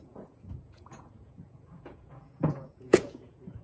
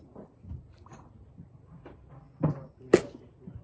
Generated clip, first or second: first